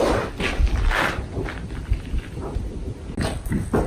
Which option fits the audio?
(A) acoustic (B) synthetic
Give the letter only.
A